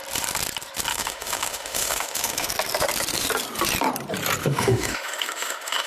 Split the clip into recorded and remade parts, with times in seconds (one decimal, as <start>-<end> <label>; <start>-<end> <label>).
0.0-0.9 recorded; 0.9-2.5 remade; 2.5-4.4 recorded; 4.4-5.9 remade